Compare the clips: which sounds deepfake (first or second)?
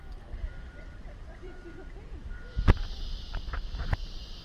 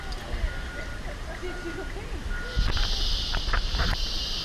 first